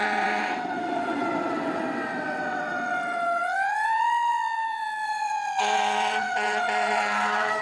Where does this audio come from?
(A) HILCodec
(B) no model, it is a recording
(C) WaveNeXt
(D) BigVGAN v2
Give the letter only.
C